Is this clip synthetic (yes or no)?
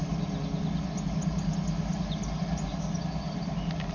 no